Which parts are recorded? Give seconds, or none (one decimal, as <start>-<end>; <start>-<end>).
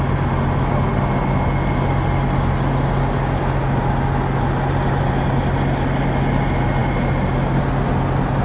0.0-8.4